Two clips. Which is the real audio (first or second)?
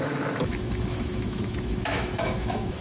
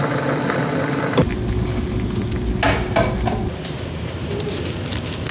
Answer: second